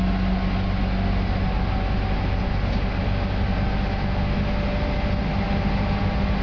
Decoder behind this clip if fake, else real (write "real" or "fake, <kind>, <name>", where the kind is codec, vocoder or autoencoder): real